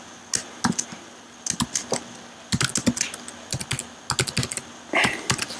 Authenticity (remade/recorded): recorded